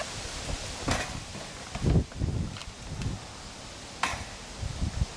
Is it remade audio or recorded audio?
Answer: recorded